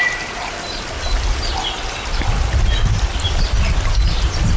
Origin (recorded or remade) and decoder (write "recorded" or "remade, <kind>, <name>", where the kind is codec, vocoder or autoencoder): recorded